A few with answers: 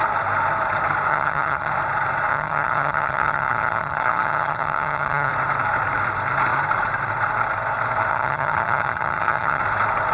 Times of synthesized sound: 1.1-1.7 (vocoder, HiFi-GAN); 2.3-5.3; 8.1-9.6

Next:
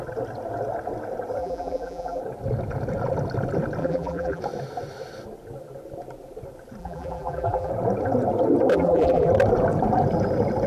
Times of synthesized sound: 1.4-2.2 (vocoder, BigVGAN v2); 3.8-4.4; 6.8-7.7; 8.7-9.3

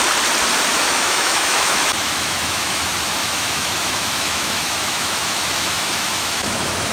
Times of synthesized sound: 0.7-2.8 (autoencoder, DAC-VAE); 3.2-6.9

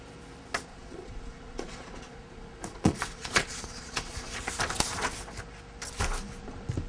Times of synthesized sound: 0.7-4.4 (vocoder, Vocos)

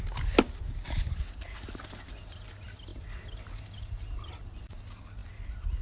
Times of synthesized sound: none

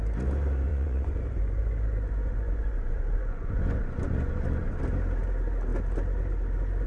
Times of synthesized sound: 0.7-4.8 (vocoder, Vocos)